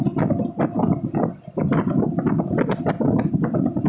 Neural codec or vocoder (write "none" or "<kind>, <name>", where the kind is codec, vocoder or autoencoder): none